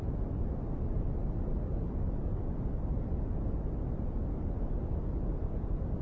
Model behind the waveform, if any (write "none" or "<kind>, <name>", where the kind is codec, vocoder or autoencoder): none